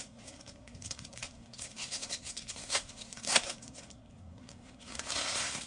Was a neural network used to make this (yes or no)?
yes